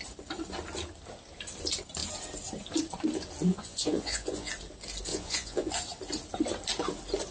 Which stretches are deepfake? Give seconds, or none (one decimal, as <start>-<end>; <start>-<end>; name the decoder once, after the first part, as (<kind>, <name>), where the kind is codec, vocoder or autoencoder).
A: 3.5-4.5 (vocoder, Vocos); 5.1-5.7